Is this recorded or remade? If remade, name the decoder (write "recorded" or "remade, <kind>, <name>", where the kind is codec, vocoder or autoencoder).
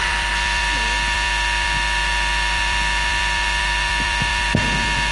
remade, vocoder, BigVGAN v2